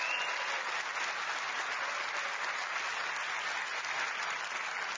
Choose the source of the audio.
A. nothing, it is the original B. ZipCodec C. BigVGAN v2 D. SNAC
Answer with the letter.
A